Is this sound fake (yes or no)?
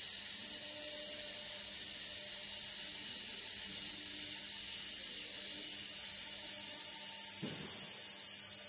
no